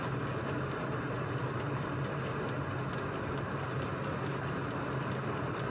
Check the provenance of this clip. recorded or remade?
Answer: recorded